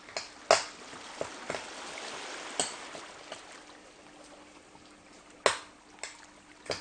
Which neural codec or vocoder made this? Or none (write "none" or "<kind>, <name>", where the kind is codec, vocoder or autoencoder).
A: none